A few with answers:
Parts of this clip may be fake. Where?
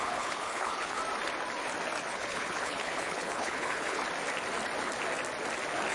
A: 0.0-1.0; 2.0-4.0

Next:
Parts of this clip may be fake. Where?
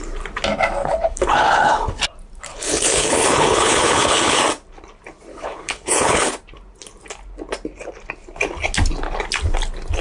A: 0.8-2.0; 2.5-4.4; 5.3-6.3